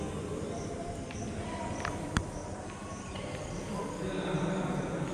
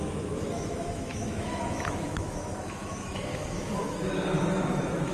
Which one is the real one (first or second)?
first